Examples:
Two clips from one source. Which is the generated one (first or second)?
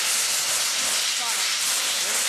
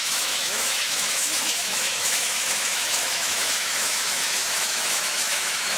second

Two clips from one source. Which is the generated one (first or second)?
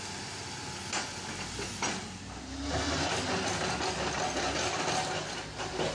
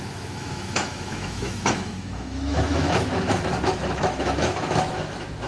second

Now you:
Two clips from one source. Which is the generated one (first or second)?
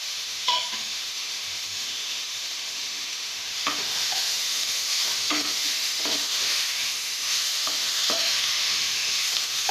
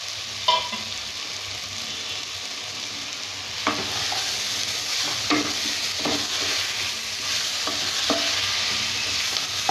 first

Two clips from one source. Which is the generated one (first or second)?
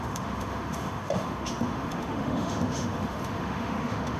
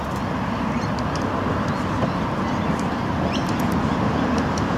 first